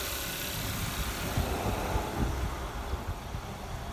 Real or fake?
real